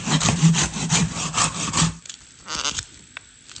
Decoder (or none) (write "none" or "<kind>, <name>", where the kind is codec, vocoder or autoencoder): vocoder, BigVGAN v2